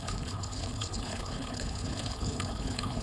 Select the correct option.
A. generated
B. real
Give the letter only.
A